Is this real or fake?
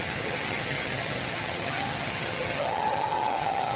fake